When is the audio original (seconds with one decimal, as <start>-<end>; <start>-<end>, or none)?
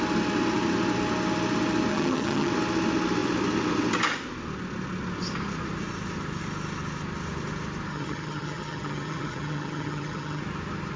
0.0-1.9; 2.5-7.9; 10.4-11.0